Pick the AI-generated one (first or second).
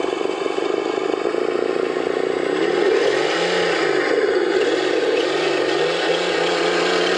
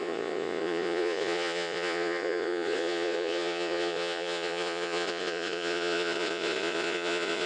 second